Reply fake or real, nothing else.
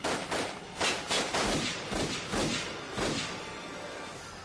real